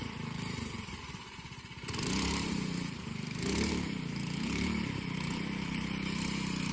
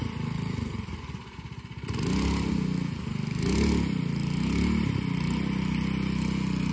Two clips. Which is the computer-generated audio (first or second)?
first